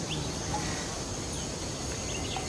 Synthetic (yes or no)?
no